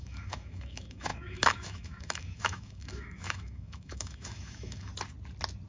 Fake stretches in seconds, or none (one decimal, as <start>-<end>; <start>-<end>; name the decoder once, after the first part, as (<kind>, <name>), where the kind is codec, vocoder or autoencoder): 0.0-4.9 (autoencoder, DAC-VAE)